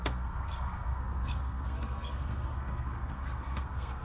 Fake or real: fake